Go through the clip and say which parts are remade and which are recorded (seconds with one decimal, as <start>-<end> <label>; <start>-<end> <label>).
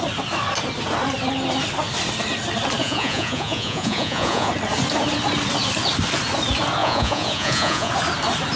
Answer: 0.0-2.8 recorded; 2.8-4.5 remade; 4.5-6.8 recorded; 6.8-7.9 remade; 7.9-8.6 recorded